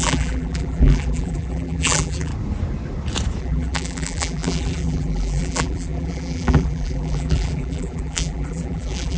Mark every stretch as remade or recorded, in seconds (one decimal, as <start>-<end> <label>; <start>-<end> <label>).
0.0-2.3 remade; 2.3-3.4 recorded; 3.4-9.2 remade